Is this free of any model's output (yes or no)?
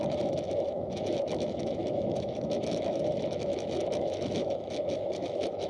no